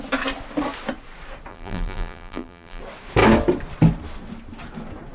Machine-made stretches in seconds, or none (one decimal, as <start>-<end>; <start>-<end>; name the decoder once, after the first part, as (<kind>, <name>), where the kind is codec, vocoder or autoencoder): 1.5-2.8 (vocoder, BigVGAN v2)